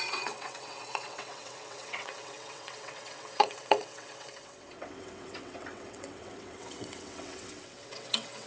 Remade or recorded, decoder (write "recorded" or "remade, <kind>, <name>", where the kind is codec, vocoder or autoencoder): remade, vocoder, WaveNeXt